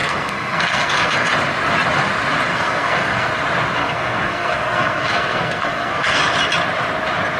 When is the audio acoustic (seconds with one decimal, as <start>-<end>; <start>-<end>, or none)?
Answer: 1.3-2.5; 3.3-3.8; 6.2-7.4